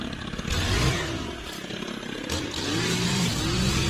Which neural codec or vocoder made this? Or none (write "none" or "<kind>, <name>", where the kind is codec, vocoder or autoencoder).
vocoder, BigVGAN v2